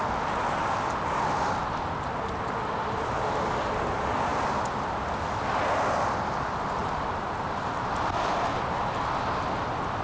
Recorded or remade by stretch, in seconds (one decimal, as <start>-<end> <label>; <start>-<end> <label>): 0.0-6.8 recorded; 6.8-7.9 remade; 7.9-10.0 recorded